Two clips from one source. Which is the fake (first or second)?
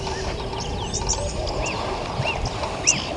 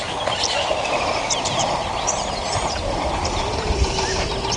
second